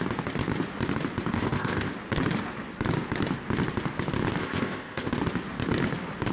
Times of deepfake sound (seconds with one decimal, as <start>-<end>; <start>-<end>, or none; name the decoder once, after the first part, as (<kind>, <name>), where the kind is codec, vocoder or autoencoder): 1.3-1.9 (codec, ZipCodec); 4.4-5.1